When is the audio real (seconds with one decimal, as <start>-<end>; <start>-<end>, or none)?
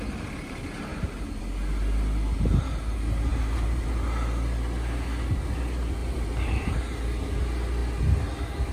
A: 0.0-0.9; 1.4-3.3; 3.9-6.0; 6.7-8.7